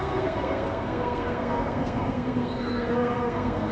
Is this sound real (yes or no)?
no